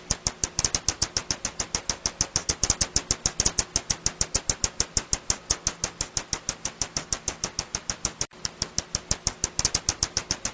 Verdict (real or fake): real